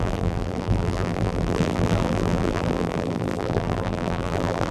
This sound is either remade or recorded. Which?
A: remade